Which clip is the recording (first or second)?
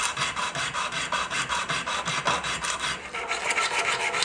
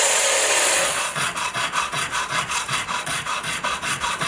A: first